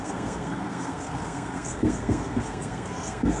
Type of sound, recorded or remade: remade